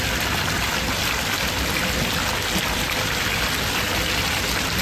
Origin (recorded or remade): recorded